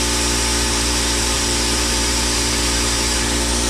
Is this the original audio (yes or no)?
no